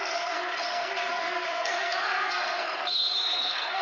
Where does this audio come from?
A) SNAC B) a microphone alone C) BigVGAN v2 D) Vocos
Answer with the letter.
A